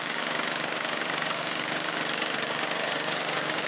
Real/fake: fake